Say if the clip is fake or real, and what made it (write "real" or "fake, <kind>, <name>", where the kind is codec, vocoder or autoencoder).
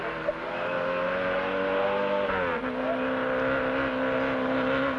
real